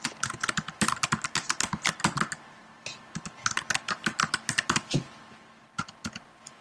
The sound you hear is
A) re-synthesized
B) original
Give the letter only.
B